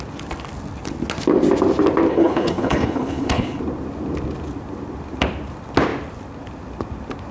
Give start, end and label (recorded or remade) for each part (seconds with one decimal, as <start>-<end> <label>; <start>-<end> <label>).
0.0-2.1 recorded; 2.1-3.6 remade; 3.6-7.3 recorded